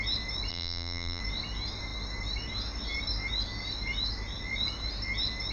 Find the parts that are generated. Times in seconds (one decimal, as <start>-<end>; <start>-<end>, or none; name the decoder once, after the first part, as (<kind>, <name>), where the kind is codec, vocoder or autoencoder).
0.5-1.2 (vocoder, BigVGAN v2)